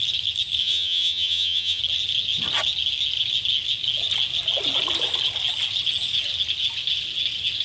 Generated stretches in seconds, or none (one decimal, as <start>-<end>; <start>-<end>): 0.6-1.8